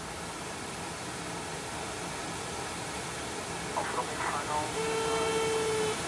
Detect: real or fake real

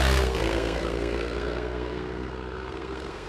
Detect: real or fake fake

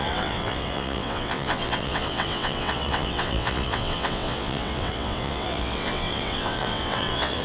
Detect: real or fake fake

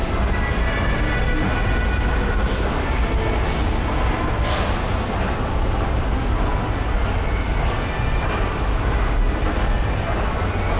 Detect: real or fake real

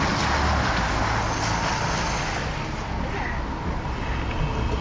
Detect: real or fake real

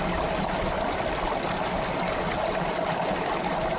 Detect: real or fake real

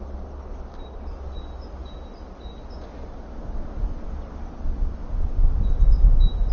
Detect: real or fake real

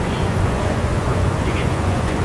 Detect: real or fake fake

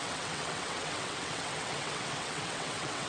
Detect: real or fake fake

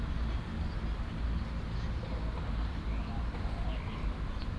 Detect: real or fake real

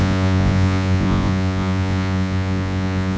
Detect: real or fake fake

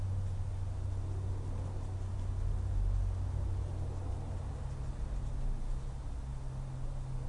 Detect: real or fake real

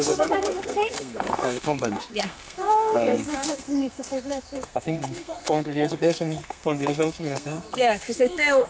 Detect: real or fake fake